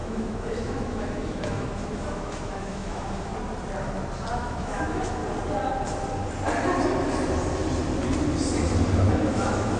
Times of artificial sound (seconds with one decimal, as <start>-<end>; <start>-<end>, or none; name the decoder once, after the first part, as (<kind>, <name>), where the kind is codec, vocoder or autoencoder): 0.0-3.3 (autoencoder, DAC-VAE); 4.3-5.2; 9.0-9.8